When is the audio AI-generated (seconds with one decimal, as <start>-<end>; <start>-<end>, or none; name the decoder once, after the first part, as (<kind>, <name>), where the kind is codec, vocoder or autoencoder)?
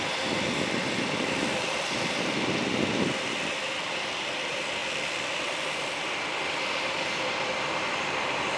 0.0-8.6 (vocoder, BigVGAN v2)